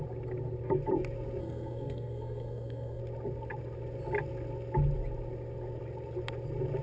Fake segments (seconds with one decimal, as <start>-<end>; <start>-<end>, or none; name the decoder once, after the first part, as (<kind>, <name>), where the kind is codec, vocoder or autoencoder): 1.4-3.0 (codec, SNAC)